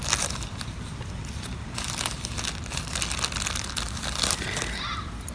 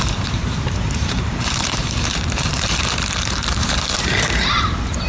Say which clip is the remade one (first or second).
second